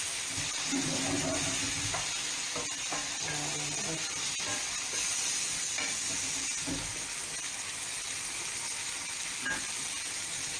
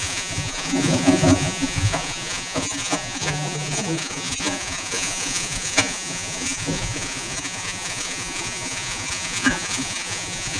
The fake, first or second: second